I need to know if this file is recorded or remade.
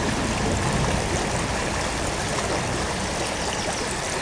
recorded